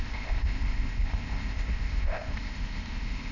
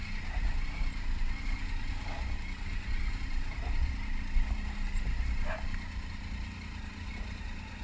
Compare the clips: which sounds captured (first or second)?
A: second